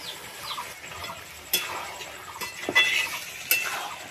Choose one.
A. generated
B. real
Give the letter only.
B